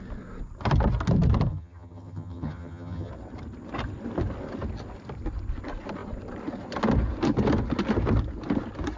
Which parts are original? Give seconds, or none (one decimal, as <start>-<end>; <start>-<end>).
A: 0.0-1.5; 3.1-9.0

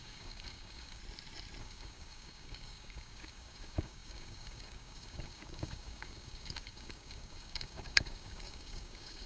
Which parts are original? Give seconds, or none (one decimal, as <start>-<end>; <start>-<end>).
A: 1.0-1.6